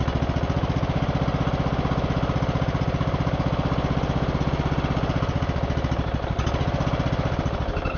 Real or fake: real